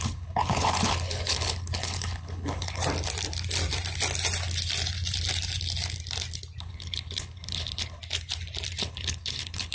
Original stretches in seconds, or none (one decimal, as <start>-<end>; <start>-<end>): 2.8-6.6; 8.0-8.8